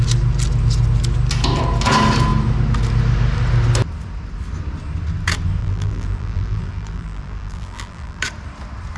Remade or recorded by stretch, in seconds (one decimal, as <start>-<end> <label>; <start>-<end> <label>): 0.0-5.6 recorded; 5.6-8.2 remade; 8.2-9.0 recorded